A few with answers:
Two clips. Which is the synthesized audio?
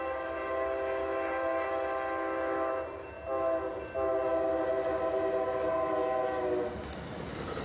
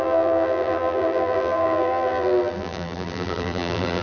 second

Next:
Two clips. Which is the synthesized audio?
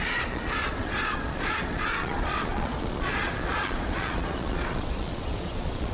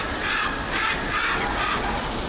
first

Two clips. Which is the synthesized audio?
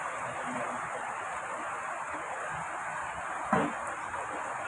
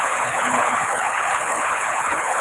second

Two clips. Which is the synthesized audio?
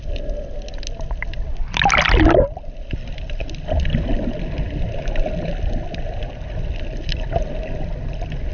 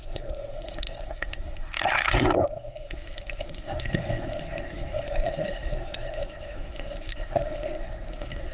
second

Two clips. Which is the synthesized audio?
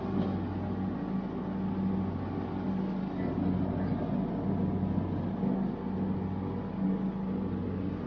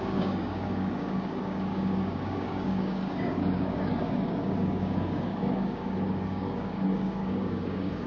second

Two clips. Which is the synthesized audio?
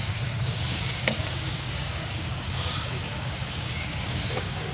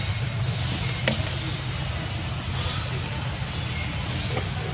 first